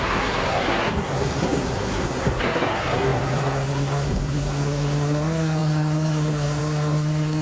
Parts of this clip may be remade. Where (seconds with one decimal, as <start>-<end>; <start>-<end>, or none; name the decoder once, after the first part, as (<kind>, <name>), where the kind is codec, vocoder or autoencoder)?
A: 0.0-7.4 (codec, SNAC)